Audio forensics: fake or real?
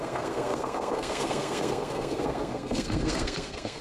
fake